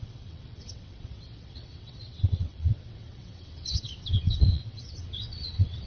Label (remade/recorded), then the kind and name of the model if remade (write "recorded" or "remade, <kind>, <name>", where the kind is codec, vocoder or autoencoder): remade, vocoder, WaveNeXt